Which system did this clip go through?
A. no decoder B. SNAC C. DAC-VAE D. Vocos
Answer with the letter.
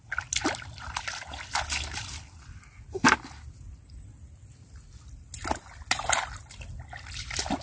A